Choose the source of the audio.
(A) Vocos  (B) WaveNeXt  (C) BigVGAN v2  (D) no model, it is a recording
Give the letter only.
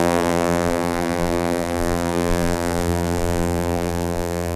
C